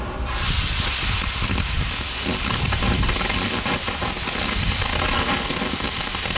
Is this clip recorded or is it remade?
recorded